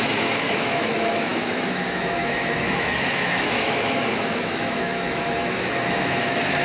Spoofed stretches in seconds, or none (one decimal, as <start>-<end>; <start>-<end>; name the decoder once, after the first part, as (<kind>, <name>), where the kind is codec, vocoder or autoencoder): 0.0-6.6 (autoencoder, DAC-VAE)